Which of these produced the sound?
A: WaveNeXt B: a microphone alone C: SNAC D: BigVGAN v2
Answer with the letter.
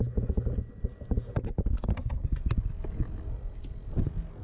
B